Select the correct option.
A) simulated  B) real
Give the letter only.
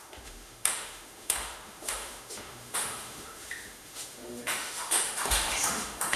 A